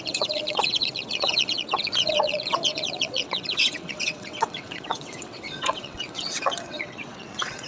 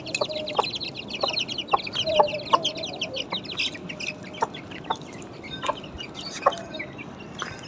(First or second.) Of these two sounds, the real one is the second